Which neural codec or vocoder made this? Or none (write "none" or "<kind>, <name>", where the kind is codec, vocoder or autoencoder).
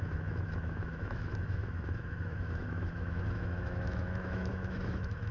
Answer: autoencoder, DAC-VAE